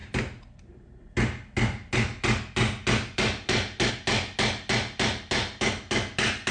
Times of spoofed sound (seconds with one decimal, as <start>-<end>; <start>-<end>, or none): none